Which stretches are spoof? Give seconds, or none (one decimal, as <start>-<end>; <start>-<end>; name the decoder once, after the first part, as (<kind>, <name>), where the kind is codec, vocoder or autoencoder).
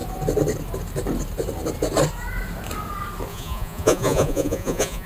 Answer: 3.3-5.1 (vocoder, Vocos)